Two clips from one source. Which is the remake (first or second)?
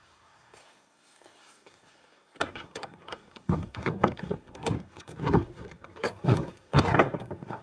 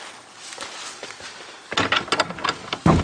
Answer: first